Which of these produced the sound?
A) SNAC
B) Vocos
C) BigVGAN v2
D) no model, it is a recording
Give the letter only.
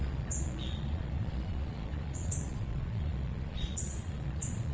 B